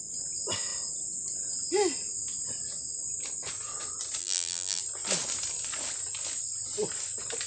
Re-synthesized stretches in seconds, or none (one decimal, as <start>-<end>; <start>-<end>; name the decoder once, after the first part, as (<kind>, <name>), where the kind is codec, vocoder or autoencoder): 4.2-4.8 (vocoder, BigVGAN v2)